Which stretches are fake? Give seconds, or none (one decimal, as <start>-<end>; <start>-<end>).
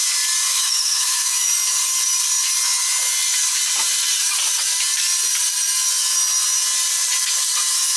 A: 0.5-1.5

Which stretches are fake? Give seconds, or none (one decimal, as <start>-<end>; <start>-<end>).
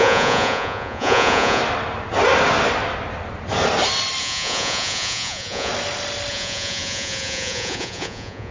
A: 0.0-1.6; 4.2-5.7; 6.3-8.5